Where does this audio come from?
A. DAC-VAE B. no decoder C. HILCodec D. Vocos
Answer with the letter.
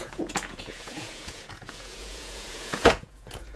D